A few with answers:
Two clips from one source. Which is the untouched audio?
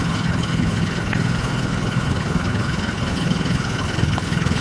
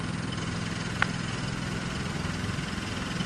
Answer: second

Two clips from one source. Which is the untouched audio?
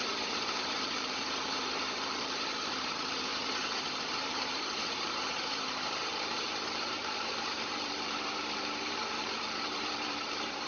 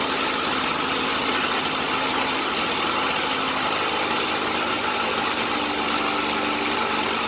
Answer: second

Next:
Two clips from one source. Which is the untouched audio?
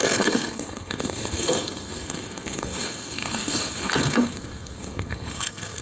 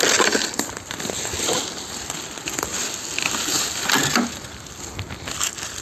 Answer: second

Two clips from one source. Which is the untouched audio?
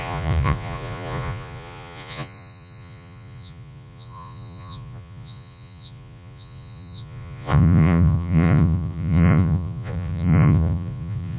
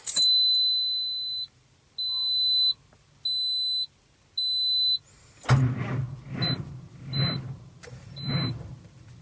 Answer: second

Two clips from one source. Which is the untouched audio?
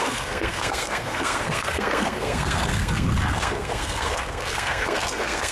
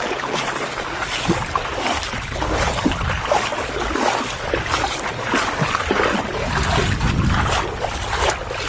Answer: second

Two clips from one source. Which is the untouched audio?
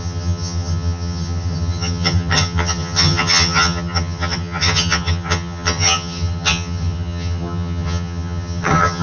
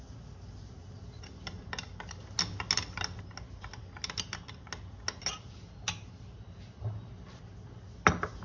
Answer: second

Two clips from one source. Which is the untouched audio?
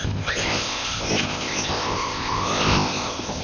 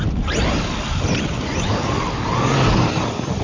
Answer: second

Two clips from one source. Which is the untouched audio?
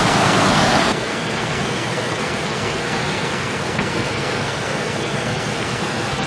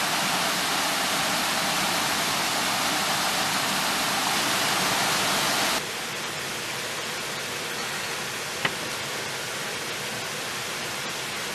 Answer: second